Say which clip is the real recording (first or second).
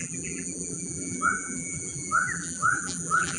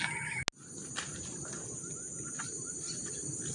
second